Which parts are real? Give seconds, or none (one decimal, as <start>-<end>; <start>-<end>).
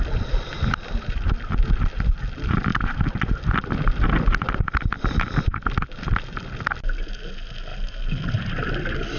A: 0.0-9.2